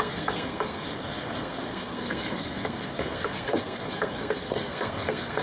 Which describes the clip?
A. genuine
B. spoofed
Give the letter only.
B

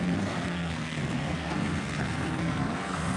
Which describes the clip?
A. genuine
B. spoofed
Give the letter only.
B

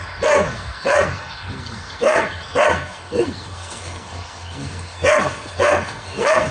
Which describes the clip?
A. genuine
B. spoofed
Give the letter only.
B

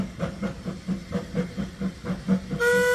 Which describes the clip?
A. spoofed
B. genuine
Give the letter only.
B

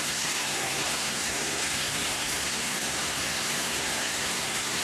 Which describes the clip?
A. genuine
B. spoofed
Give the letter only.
B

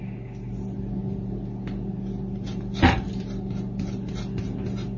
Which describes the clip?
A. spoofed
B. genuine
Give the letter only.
B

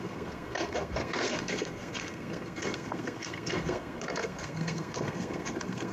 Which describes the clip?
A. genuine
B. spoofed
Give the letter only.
B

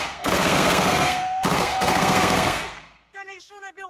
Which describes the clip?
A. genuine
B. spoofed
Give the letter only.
B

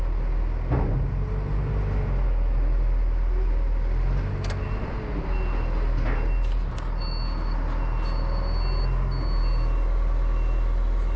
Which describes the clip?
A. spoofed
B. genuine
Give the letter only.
B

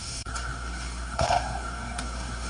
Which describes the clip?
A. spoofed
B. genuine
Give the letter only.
A